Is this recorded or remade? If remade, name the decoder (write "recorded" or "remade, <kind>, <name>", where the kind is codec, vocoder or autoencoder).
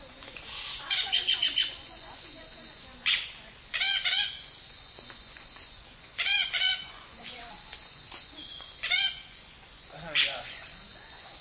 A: remade, vocoder, Vocos